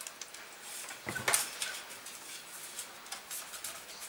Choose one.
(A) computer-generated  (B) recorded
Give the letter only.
B